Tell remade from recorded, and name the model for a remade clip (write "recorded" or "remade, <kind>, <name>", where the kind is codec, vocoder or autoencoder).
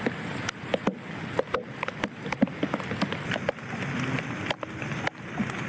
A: recorded